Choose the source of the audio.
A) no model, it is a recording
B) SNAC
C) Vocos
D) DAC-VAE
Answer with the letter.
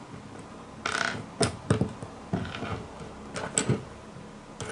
A